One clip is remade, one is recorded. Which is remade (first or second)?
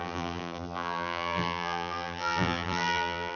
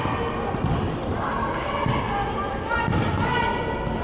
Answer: first